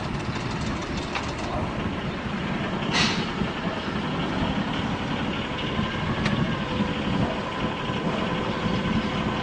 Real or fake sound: real